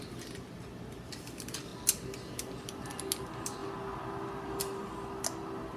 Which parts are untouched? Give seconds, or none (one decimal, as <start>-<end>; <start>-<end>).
0.0-5.8